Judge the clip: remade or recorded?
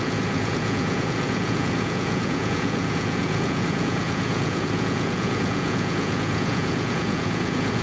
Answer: remade